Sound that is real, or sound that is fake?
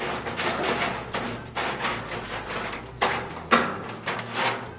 real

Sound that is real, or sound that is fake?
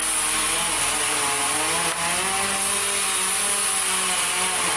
real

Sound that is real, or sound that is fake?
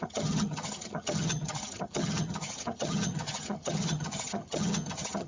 fake